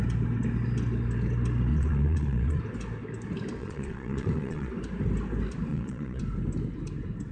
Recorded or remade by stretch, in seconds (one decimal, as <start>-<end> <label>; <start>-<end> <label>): 0.0-1.7 recorded; 1.7-2.6 remade; 2.6-3.6 recorded; 3.6-4.7 remade; 4.7-5.7 recorded; 5.7-6.2 remade; 6.2-7.3 recorded